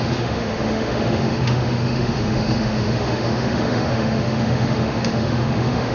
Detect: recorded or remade remade